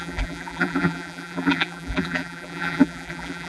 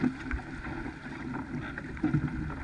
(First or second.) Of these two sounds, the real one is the second